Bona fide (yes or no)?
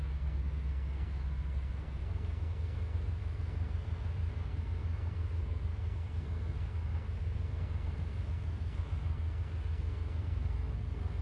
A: no